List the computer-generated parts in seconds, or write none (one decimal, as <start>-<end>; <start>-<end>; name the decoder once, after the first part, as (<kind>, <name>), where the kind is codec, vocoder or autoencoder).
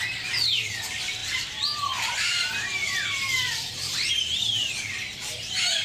1.2-4.7 (vocoder, BigVGAN v2)